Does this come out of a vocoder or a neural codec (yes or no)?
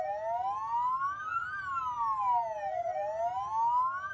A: no